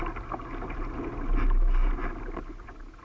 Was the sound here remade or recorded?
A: recorded